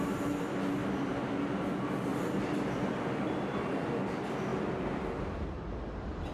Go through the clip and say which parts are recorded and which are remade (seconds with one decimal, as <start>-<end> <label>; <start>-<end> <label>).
0.0-0.8 recorded; 0.8-1.3 remade; 1.3-2.1 recorded; 2.1-2.9 remade; 2.9-6.3 recorded